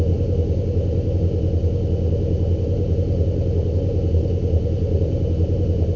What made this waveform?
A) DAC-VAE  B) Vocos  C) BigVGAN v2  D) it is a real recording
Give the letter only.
D